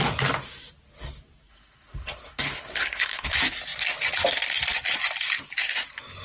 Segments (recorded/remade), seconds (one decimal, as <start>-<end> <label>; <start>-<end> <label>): 0.0-1.5 recorded; 1.5-3.3 remade; 3.3-6.2 recorded